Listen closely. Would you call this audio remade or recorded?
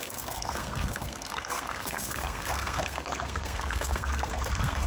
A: remade